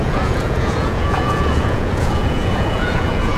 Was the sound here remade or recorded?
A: remade